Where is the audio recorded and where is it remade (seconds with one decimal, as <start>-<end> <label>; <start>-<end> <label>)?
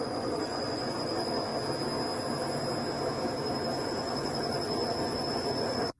0.0-1.5 remade; 1.5-3.8 recorded; 3.8-6.0 remade